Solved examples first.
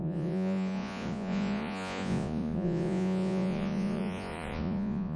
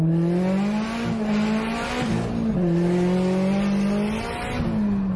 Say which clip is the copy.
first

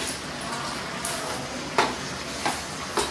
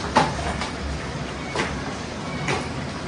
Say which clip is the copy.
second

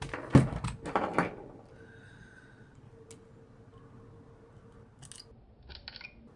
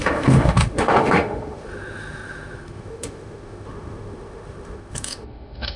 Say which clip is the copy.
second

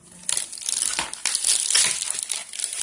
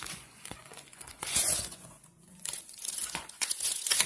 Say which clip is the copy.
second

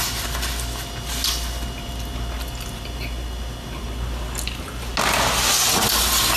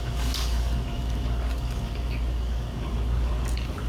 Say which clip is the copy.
second